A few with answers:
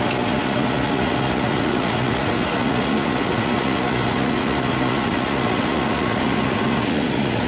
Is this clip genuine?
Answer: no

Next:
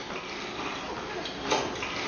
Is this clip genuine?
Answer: yes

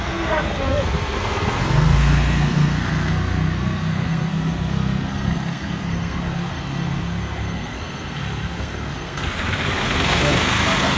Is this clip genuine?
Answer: no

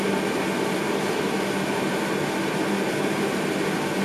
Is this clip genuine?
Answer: yes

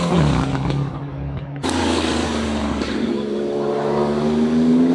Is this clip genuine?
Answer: no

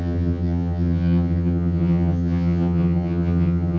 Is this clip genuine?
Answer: no